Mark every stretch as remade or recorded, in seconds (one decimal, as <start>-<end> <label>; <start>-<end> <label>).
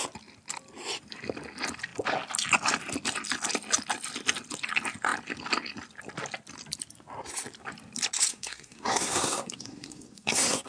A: 0.0-8.3 recorded; 8.3-10.7 remade